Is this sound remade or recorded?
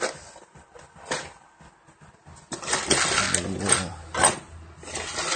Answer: recorded